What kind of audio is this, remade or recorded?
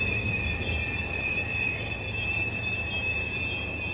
remade